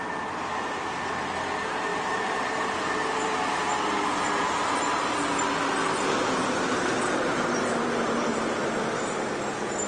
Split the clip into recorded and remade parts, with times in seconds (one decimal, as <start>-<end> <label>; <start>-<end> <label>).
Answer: 0.0-1.9 recorded; 1.9-3.3 remade; 3.3-4.6 recorded; 4.6-5.1 remade; 5.1-7.8 recorded; 7.8-9.4 remade; 9.4-9.9 recorded